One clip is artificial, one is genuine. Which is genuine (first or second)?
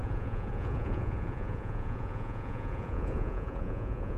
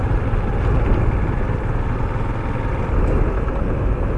second